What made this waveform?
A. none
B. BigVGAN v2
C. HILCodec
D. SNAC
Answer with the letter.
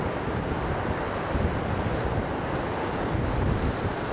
A